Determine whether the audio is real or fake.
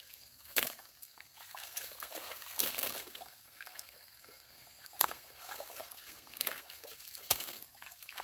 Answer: fake